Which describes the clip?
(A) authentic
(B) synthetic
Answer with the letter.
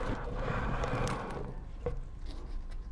A